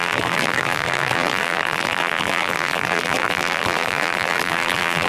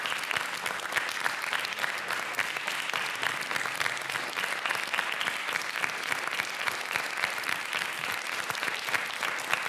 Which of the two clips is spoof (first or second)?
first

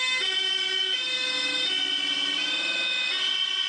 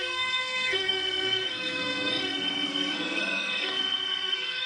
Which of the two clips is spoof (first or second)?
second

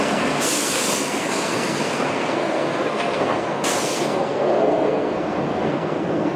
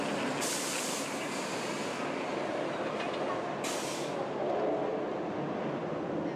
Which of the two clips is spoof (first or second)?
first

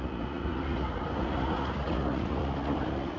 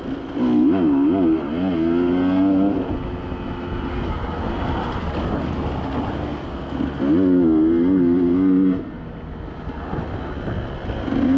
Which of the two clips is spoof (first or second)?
first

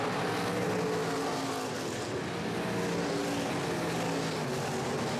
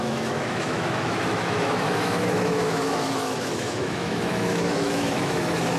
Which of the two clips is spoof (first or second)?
second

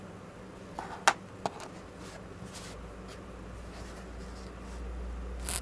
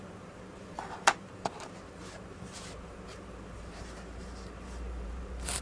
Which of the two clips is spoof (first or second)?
second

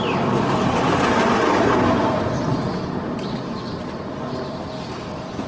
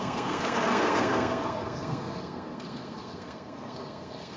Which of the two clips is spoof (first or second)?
second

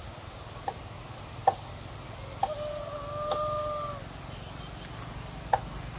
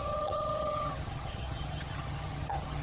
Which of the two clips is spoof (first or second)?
second